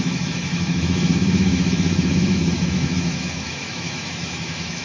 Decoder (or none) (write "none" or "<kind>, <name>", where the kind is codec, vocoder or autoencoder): autoencoder, DAC-VAE